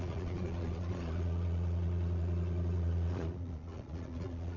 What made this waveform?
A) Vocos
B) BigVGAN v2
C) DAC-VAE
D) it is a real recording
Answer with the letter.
A